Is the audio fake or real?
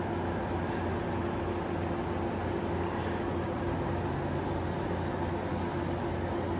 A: real